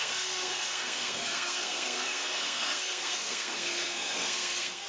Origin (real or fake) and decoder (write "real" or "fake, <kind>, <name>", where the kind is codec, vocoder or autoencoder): fake, codec, SNAC